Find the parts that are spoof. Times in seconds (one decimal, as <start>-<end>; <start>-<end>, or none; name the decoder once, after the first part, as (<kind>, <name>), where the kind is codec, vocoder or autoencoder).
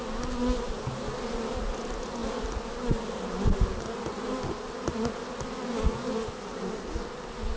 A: none